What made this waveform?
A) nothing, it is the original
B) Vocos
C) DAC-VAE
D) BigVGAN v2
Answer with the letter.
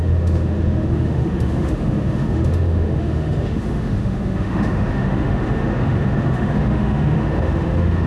C